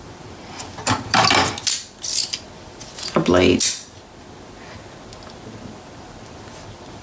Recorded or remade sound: recorded